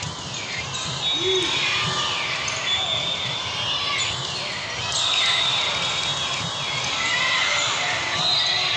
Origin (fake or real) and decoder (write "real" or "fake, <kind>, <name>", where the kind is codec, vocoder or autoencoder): real